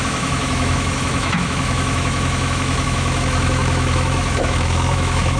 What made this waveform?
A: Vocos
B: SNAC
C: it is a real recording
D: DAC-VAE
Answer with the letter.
D